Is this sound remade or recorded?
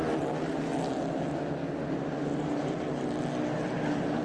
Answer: recorded